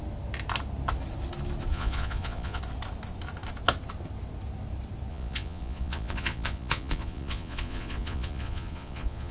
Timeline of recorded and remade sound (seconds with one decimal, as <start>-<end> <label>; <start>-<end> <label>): 0.0-1.7 recorded; 1.7-2.6 remade; 2.6-5.1 recorded; 5.1-9.3 remade